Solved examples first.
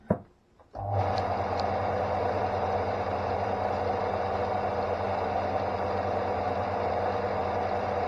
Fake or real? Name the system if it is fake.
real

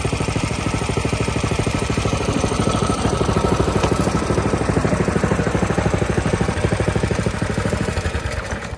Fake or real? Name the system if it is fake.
fake, vocoder, BigVGAN v2